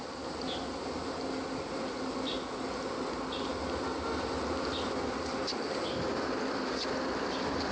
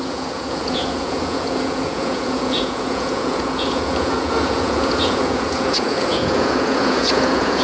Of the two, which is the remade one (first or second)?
second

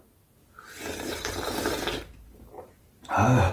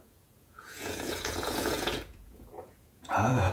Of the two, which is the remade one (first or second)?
second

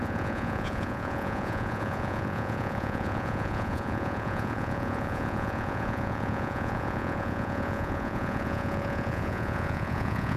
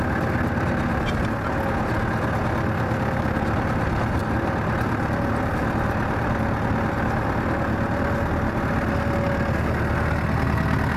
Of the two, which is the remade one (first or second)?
first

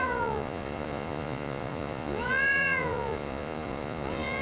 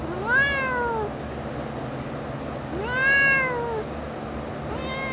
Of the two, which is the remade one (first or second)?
first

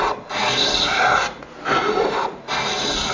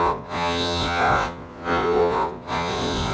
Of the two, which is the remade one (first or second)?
second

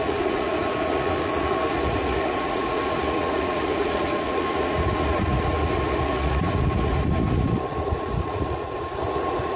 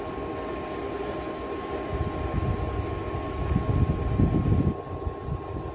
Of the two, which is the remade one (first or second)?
first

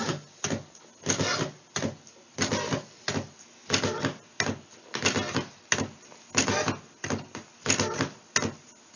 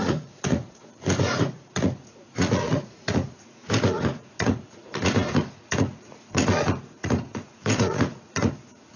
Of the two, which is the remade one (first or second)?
second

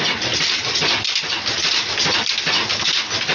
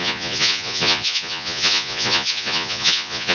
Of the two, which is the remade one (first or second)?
second